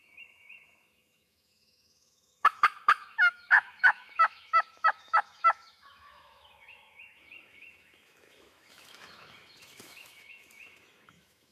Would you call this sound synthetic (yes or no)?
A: yes